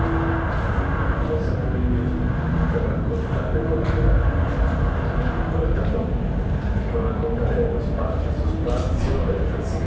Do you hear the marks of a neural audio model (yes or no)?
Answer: no